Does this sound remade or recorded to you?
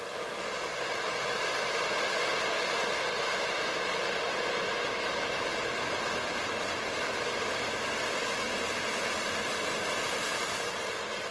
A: recorded